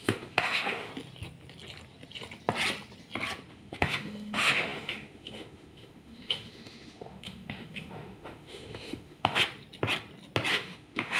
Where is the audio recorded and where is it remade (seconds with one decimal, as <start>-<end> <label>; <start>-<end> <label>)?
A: 0.0-0.9 remade; 0.9-3.5 recorded; 3.5-9.4 remade; 9.4-10.5 recorded; 10.5-11.2 remade

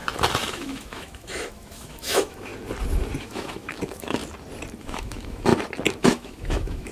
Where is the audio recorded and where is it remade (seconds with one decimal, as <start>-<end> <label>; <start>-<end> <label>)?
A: 0.0-0.5 recorded; 0.5-2.5 remade; 2.5-3.2 recorded; 3.2-4.2 remade; 4.2-4.8 recorded; 4.8-5.5 remade; 5.5-6.0 recorded; 6.0-6.9 remade

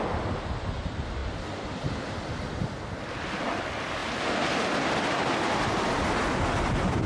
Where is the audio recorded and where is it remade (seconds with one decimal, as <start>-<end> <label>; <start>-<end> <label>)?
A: 0.0-7.1 recorded

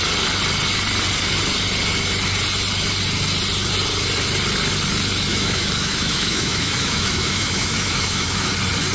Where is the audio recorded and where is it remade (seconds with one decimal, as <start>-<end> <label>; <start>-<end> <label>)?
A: 0.0-5.3 recorded; 5.3-8.5 remade; 8.5-8.9 recorded

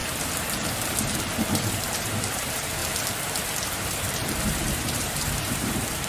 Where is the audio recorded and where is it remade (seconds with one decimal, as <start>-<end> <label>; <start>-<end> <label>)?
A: 0.0-1.7 recorded; 1.7-2.8 remade; 2.8-4.4 recorded; 4.4-6.1 remade

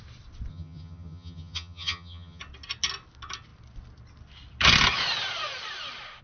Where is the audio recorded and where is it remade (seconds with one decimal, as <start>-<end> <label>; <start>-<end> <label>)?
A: 0.0-0.5 recorded; 0.5-2.4 remade; 2.4-6.2 recorded